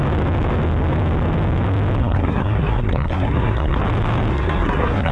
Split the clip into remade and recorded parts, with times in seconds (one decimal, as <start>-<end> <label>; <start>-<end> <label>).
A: 0.0-2.0 recorded; 2.0-3.8 remade; 3.8-4.3 recorded; 4.3-5.1 remade

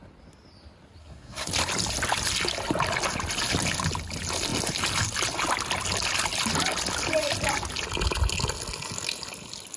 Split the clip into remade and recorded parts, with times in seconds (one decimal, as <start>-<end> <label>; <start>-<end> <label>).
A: 0.0-1.0 recorded; 1.0-1.5 remade; 1.5-9.8 recorded

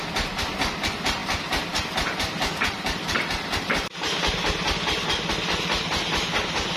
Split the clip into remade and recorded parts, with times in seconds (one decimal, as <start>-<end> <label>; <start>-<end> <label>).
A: 0.0-6.8 recorded